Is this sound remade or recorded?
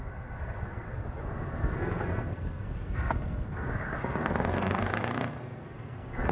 remade